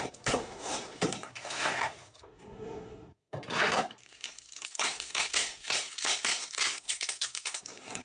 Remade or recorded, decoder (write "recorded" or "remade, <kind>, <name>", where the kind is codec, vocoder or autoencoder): remade, codec, SNAC